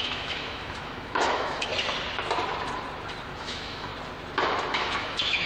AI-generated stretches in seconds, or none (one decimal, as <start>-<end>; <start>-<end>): 0.0-1.7; 3.4-3.9; 4.7-5.5